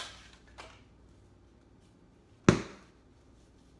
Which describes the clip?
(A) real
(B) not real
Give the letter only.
A